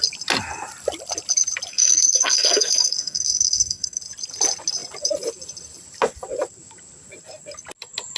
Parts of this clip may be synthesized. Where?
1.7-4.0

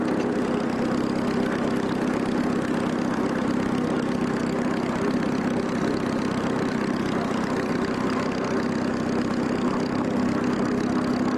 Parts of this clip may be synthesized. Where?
4.4-8.3

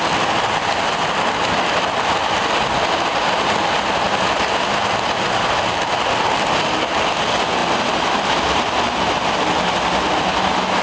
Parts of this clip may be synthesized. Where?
none

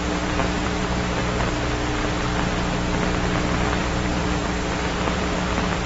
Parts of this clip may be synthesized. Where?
0.4-1.2; 3.8-5.9

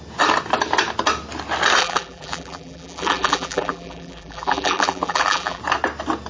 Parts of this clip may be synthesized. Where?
1.8-5.6

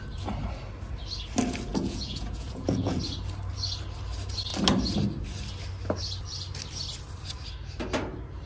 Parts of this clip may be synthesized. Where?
1.7-3.0